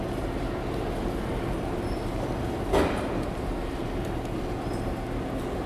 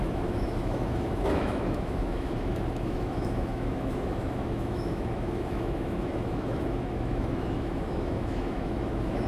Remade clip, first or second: second